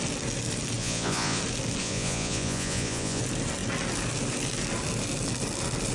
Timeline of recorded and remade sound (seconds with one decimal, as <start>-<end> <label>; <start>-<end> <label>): 0.0-0.8 recorded; 0.8-1.4 remade; 1.4-1.8 recorded; 1.8-3.2 remade; 3.2-5.9 recorded